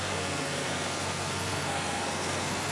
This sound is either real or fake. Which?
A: fake